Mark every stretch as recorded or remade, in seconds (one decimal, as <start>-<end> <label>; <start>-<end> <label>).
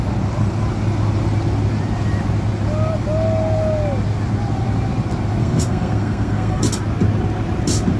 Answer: 0.0-5.4 recorded; 5.4-6.6 remade; 6.6-8.0 recorded